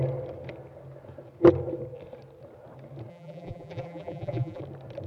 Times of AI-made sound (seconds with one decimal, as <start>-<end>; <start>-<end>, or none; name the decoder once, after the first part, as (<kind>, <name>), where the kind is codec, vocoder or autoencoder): 3.1-4.6 (vocoder, BigVGAN v2)